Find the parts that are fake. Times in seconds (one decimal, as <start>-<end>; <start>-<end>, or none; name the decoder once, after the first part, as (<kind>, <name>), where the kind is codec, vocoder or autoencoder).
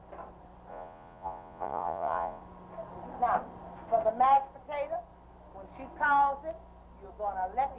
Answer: 0.7-2.4 (vocoder, Vocos)